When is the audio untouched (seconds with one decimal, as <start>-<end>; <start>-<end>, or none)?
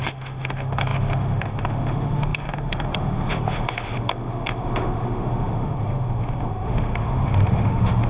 none